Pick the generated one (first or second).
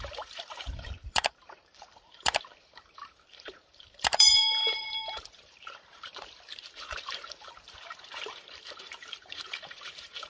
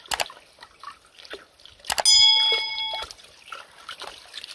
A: first